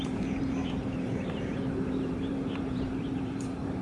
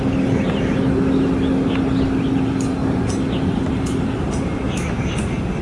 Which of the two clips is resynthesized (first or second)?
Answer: first